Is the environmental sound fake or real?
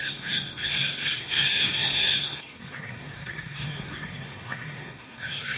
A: fake